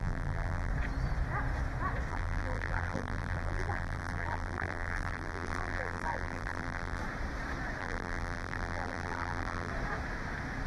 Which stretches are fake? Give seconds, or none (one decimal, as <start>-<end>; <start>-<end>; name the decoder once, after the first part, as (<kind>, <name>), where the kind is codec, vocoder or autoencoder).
0.0-0.7 (vocoder, BigVGAN v2); 2.1-7.0; 7.8-9.7